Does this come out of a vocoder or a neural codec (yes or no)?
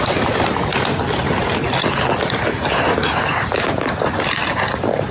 no